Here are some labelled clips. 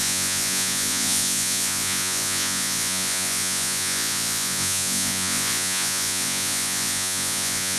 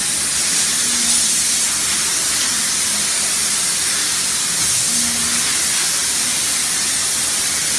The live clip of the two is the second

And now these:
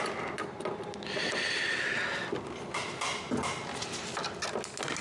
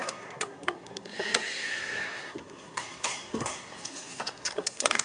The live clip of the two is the first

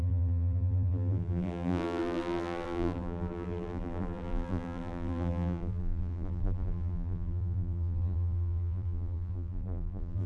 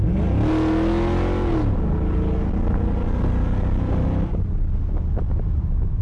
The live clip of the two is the second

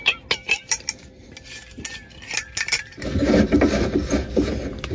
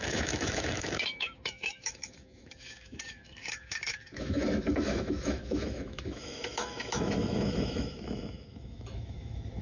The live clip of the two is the first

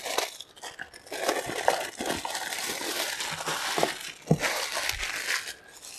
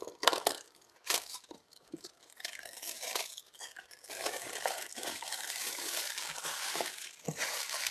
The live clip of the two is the first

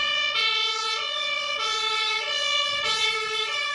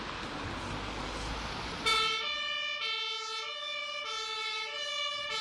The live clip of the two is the second